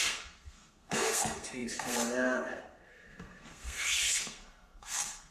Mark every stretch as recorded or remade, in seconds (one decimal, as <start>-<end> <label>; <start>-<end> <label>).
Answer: 0.0-5.3 remade